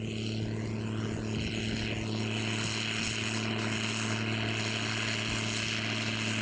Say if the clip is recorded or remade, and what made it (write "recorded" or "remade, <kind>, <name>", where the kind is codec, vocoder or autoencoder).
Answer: recorded